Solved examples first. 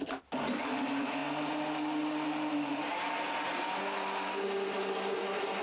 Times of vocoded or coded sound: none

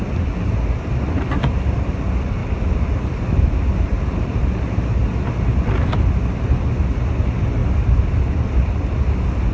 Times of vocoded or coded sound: none

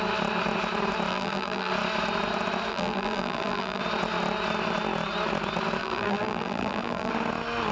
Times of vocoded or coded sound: 1.1-1.7 (vocoder, BigVGAN v2); 2.7-3.8; 5.8-7.1

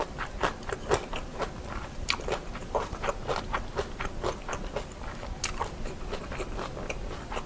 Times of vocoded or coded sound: none

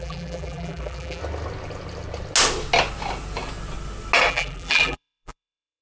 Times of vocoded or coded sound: 0.0-1.2 (vocoder, BigVGAN v2); 4.3-5.8

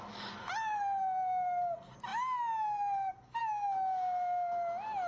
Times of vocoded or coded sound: none